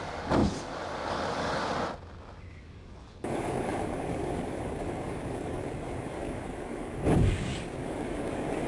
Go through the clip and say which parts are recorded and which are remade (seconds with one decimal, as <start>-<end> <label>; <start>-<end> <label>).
0.0-1.6 remade; 1.6-2.5 recorded; 2.5-8.7 remade